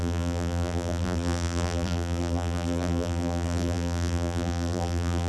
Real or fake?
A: fake